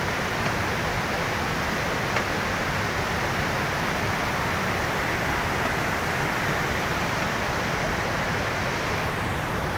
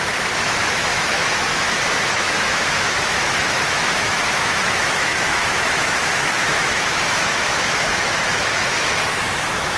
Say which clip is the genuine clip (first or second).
first